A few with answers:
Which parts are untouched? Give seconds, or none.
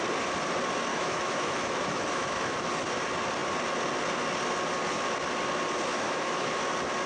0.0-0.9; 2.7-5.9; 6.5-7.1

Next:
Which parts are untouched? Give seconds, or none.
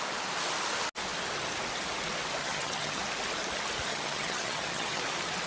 0.0-2.4; 3.0-3.9; 5.0-5.5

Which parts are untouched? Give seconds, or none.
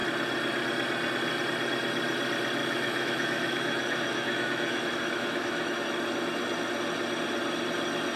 0.0-2.6; 5.9-8.2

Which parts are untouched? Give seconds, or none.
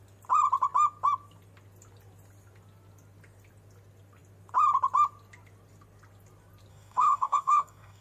0.0-6.7